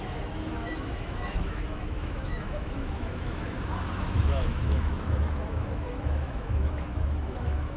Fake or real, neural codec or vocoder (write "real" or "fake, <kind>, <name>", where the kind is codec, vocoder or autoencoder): fake, autoencoder, DAC-VAE